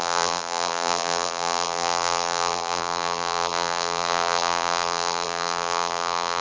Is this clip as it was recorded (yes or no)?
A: no